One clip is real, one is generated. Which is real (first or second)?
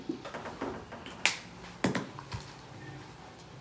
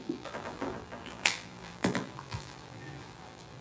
first